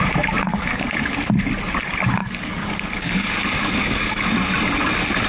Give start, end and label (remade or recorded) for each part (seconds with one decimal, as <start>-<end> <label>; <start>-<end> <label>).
0.0-0.5 recorded; 0.5-1.1 remade; 1.1-2.2 recorded; 2.2-4.3 remade; 4.3-5.3 recorded